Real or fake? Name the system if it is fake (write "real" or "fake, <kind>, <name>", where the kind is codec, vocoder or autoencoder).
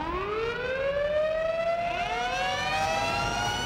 real